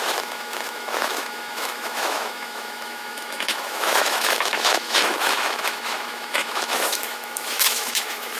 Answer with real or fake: fake